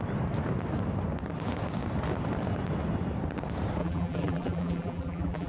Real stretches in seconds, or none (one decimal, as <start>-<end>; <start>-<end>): 0.0-3.8